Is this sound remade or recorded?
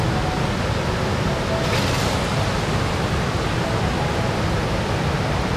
recorded